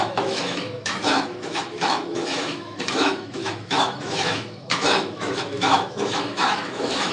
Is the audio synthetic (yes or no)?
yes